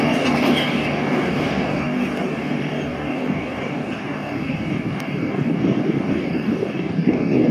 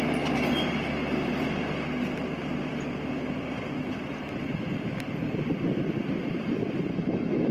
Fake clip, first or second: first